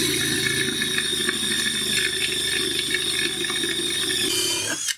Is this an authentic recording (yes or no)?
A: yes